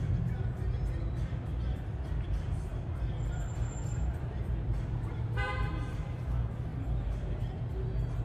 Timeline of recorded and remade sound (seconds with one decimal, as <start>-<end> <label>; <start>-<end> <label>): 0.0-2.7 recorded; 2.7-6.2 remade; 6.2-8.2 recorded